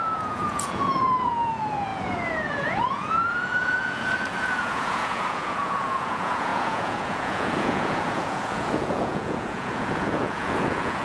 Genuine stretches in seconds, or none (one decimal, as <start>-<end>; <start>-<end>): none